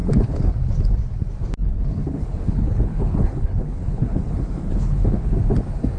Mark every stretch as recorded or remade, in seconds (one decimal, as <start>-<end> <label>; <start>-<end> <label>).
0.0-0.5 remade; 0.5-1.7 recorded; 1.7-5.3 remade; 5.3-6.0 recorded